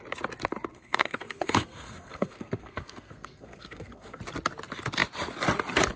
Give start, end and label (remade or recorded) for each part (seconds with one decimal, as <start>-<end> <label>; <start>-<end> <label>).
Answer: 0.0-0.7 recorded; 0.7-4.2 remade; 4.2-6.0 recorded